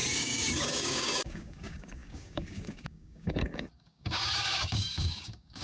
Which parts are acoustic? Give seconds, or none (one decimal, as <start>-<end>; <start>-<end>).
none